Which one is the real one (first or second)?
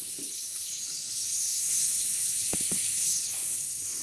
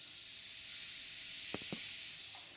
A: second